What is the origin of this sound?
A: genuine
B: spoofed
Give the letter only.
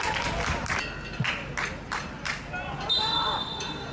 A